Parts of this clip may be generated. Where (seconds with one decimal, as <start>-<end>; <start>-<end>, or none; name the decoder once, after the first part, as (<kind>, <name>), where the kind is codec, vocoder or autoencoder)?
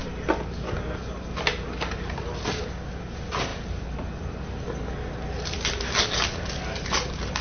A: none